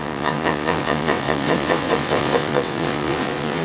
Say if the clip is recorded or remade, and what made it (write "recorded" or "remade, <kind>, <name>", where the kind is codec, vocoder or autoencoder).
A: remade, vocoder, WaveNeXt